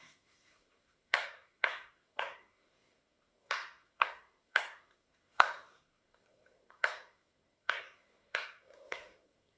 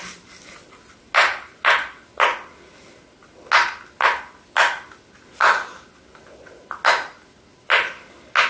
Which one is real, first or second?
second